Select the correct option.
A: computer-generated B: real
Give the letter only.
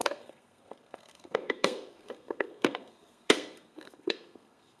A